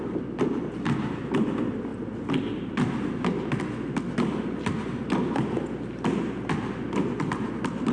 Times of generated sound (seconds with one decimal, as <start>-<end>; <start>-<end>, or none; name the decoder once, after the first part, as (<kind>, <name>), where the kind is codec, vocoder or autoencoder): none